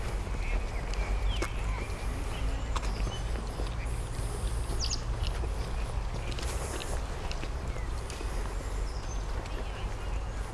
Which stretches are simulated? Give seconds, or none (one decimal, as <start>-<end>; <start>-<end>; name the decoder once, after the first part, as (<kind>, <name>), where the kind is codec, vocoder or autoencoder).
none